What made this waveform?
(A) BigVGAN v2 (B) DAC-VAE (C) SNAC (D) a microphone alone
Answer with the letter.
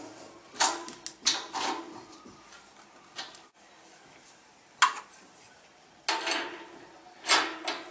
D